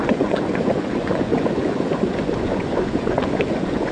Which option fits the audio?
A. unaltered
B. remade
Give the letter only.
B